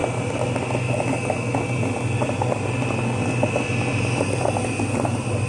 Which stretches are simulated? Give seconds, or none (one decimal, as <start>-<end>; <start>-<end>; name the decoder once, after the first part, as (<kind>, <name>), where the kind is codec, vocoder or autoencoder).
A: none